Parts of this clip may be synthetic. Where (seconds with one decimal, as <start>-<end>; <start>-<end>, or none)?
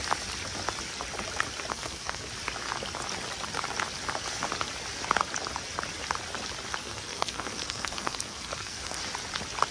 1.7-2.3; 6.8-9.0